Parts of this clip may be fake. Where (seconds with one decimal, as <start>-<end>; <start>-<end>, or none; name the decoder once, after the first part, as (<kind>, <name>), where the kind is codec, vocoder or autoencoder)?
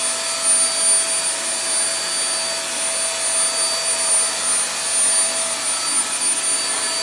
none